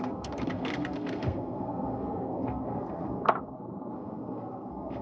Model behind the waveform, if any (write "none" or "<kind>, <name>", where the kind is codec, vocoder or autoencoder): codec, SNAC